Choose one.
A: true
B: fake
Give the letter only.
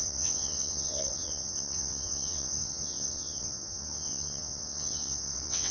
B